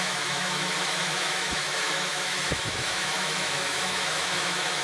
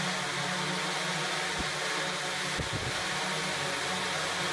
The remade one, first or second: first